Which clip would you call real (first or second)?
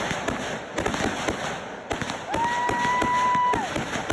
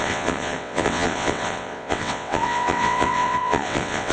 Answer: first